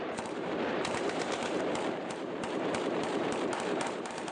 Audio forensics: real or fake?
fake